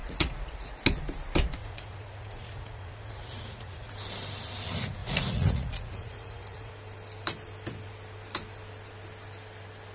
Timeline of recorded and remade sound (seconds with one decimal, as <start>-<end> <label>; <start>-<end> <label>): 0.0-0.8 remade; 0.8-1.6 recorded; 1.6-3.9 remade; 3.9-5.0 recorded; 5.0-6.7 remade; 6.7-9.9 recorded